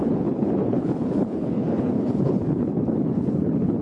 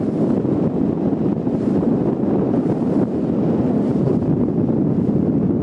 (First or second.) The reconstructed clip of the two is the first